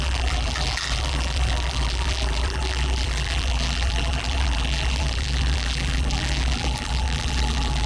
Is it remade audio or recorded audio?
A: remade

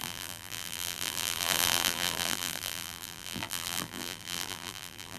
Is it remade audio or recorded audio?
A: remade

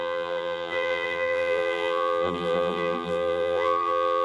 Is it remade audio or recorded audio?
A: remade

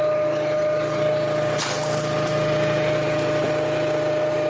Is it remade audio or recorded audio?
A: recorded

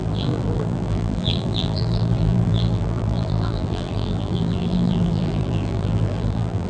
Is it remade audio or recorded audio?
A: remade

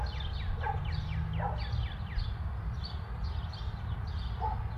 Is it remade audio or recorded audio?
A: recorded